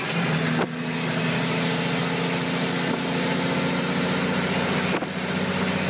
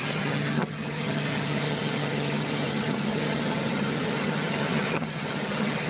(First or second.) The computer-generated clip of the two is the second